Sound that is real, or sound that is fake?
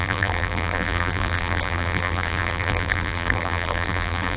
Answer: fake